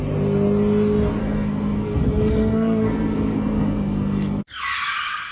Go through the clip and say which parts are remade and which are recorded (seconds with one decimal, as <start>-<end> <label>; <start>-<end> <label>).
0.0-1.2 recorded; 1.2-4.4 remade; 4.4-5.3 recorded